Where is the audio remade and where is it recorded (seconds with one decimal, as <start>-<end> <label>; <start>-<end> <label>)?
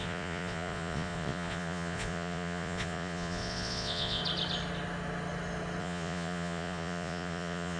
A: 0.0-4.2 remade; 4.2-5.8 recorded; 5.8-7.8 remade